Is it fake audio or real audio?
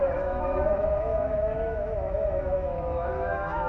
fake